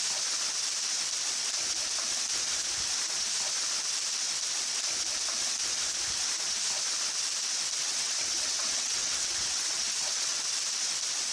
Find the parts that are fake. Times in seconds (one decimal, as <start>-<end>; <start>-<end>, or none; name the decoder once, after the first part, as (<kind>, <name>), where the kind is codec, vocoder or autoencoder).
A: 7.8-10.4 (vocoder, WaveNeXt)